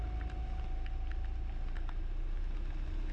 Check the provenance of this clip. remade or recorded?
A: recorded